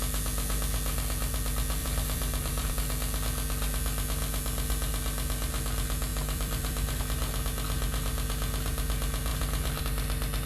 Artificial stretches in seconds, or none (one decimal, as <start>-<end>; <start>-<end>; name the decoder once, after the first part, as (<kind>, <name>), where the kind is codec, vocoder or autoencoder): 1.8-2.7 (vocoder, BigVGAN v2); 6.1-7.0; 9.3-9.8